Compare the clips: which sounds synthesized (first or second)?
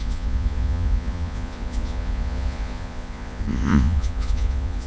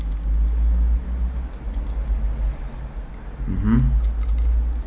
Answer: first